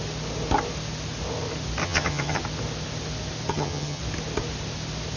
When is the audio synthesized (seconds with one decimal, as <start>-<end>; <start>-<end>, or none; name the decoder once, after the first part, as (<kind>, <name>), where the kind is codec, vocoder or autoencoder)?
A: 1.8-2.4 (vocoder, HiFi-GAN); 3.5-4.0